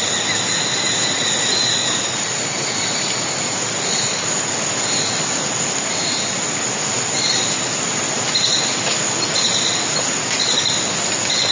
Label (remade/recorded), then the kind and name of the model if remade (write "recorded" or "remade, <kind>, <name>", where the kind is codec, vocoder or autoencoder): recorded